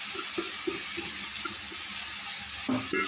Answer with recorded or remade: recorded